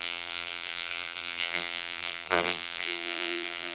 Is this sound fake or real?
fake